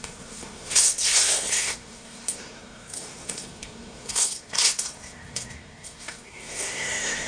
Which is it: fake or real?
fake